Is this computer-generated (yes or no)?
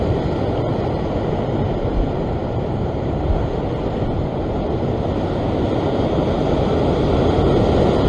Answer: no